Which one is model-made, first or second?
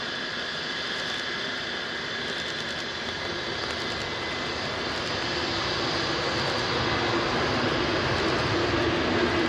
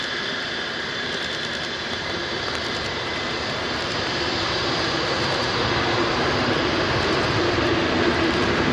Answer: second